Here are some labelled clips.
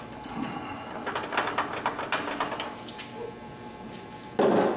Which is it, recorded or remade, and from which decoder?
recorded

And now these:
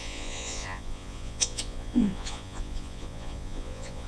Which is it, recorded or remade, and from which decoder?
remade, vocoder, Vocos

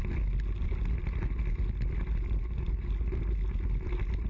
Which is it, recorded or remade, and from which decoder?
recorded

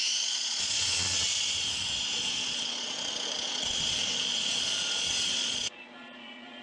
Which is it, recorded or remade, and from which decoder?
remade, vocoder, Vocos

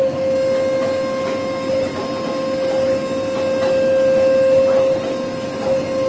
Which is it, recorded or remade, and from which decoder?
recorded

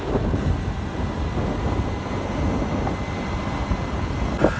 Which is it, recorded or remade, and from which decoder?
recorded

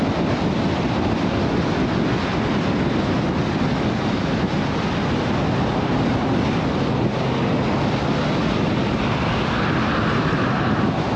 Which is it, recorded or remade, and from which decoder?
recorded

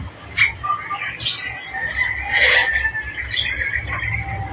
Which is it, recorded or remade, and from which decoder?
recorded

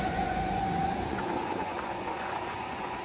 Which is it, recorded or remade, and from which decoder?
remade, vocoder, Vocos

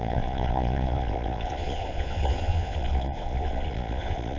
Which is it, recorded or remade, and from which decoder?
remade, vocoder, Vocos